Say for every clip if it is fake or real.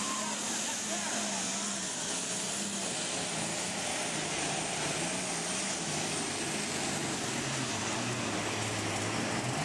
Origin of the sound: real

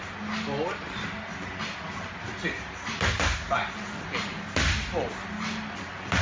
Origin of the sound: real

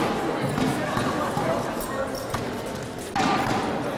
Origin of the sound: real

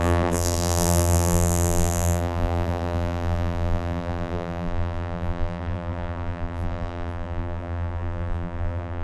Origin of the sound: fake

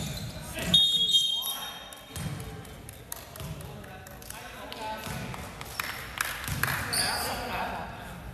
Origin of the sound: real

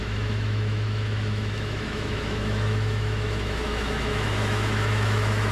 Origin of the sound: fake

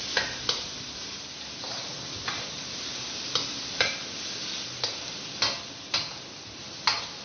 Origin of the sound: real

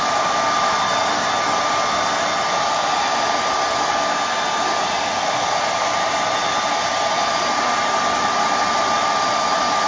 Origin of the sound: real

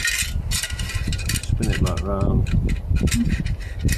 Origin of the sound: real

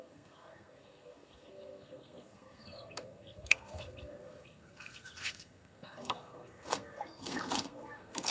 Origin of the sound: fake